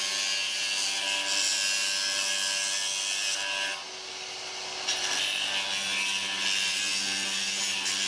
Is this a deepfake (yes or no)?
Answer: no